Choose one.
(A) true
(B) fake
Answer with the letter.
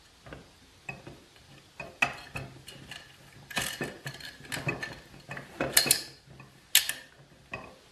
A